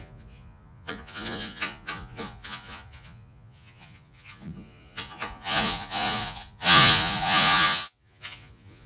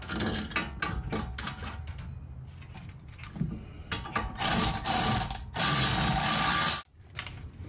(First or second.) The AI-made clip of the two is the first